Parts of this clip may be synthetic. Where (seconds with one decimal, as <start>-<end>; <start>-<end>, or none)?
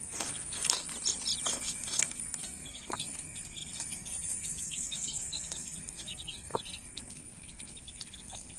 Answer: 0.0-0.9; 1.5-8.6